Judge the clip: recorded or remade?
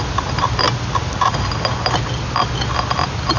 recorded